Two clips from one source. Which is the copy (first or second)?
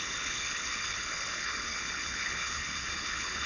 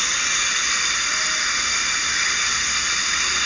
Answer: first